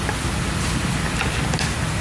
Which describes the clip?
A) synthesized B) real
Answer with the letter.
B